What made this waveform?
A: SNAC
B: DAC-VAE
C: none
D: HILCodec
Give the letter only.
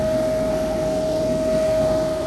A